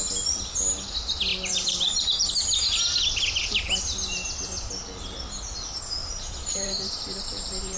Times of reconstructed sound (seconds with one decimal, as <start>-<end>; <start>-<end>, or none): 1.3-2.3; 6.0-7.8